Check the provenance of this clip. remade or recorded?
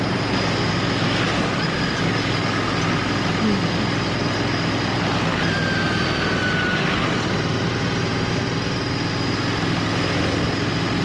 recorded